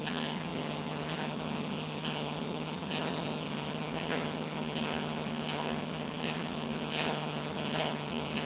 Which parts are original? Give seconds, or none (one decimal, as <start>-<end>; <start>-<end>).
none